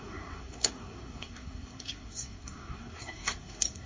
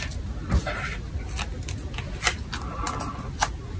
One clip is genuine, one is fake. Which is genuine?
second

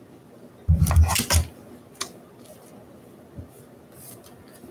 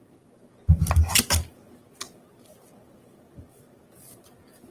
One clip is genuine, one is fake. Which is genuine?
first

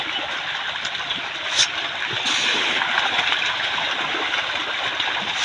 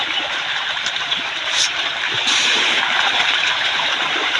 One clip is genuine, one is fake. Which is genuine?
first